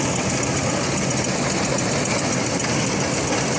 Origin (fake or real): real